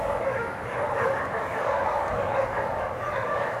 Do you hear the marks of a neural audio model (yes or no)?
yes